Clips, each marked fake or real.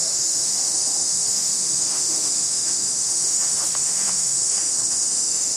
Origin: fake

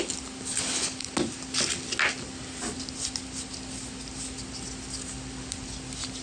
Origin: real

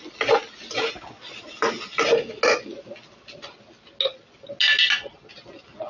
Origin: real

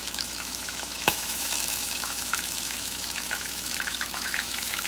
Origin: fake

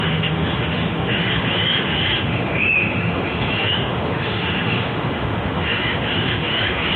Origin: fake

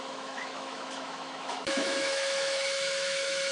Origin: fake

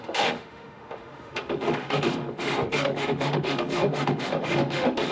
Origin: fake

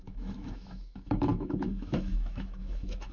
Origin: fake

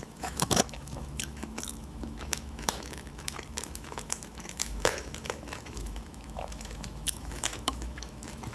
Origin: fake